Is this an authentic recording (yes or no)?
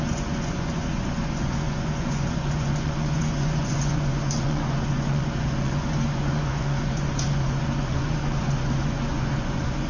no